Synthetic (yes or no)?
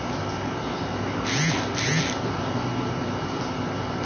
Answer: no